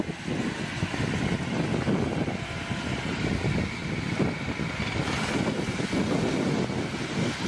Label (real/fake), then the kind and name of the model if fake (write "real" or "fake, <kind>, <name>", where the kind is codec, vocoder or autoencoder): real